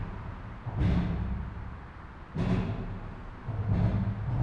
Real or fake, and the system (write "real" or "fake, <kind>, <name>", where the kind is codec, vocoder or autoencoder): real